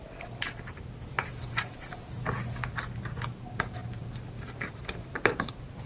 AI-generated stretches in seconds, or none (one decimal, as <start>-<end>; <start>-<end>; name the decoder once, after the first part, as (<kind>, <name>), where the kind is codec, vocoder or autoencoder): 1.0-2.1 (vocoder, BigVGAN v2); 3.8-5.5